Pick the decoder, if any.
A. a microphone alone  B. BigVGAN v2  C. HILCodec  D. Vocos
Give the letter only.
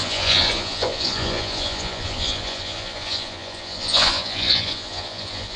D